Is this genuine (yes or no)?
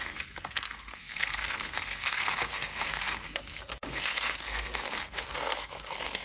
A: no